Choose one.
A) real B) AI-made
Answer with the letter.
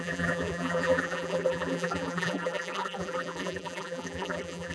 B